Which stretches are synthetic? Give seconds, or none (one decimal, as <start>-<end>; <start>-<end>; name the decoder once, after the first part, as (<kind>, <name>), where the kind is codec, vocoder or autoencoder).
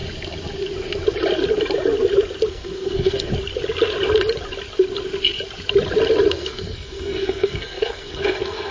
2.5-3.3 (codec, SNAC); 6.3-8.7